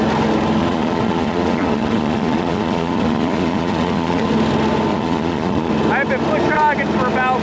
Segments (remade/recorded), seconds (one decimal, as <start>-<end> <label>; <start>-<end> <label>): 0.0-0.6 recorded; 0.6-4.3 remade; 4.3-4.9 recorded; 4.9-5.7 remade; 5.7-7.4 recorded